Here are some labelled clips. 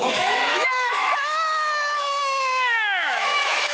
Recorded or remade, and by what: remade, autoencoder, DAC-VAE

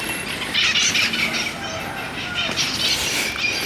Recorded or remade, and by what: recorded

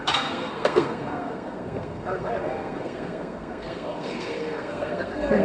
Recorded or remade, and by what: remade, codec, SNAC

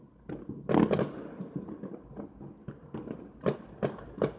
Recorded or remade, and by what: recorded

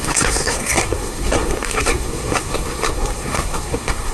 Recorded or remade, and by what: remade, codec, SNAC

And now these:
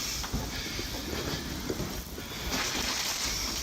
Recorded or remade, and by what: recorded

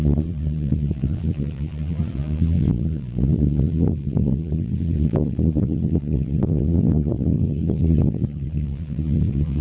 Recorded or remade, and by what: remade, vocoder, Vocos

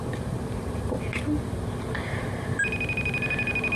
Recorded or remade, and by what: recorded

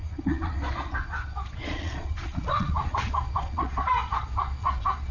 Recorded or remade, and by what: remade, vocoder, Vocos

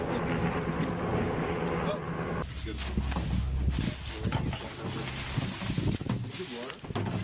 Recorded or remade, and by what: recorded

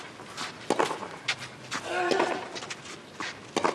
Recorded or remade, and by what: recorded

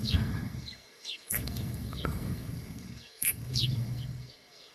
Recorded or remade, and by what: remade, codec, SNAC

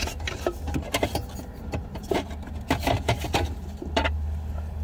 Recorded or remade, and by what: recorded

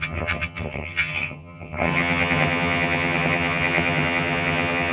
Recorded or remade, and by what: remade, vocoder, HiFi-GAN